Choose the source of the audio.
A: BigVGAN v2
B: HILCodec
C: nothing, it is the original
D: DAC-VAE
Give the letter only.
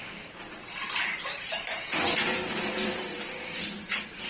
A